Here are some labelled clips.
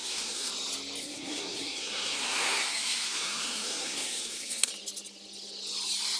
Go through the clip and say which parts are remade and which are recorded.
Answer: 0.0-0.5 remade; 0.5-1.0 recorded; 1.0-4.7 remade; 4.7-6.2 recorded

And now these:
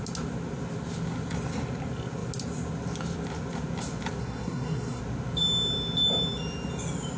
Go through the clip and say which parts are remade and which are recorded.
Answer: 0.0-4.2 recorded; 4.2-5.0 remade; 5.0-7.2 recorded

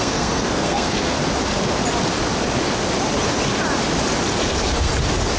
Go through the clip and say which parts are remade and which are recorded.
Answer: 0.0-1.2 remade; 1.2-4.4 recorded; 4.4-4.9 remade; 4.9-5.4 recorded

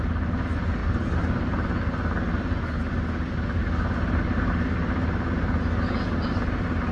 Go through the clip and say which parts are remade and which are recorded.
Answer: 0.0-6.9 recorded

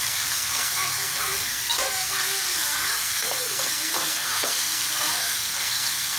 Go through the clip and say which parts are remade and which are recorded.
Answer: 0.0-6.2 remade

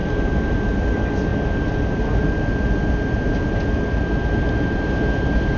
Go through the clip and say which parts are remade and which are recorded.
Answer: 0.0-5.6 recorded